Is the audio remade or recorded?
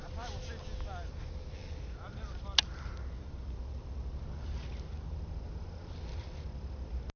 recorded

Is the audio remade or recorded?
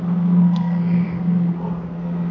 remade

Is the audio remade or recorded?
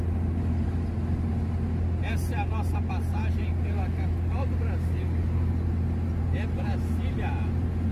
recorded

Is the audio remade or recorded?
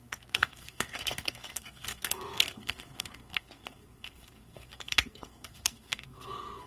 remade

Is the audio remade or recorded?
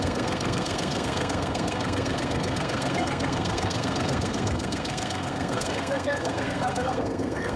remade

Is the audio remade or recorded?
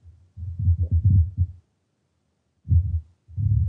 recorded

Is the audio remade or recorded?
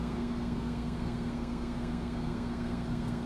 remade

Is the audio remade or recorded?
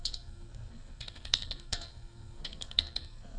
remade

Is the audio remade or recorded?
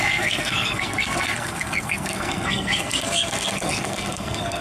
remade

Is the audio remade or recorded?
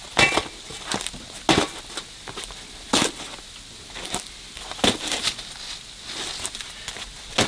recorded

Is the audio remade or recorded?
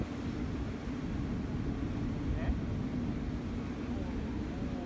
recorded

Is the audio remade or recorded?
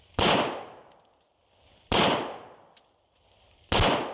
recorded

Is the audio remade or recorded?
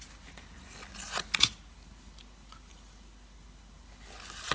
recorded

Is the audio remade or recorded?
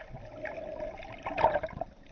recorded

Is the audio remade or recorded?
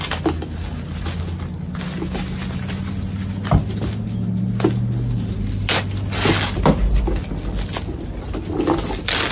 recorded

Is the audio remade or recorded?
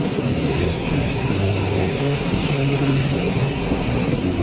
remade